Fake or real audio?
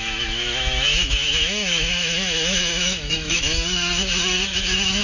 fake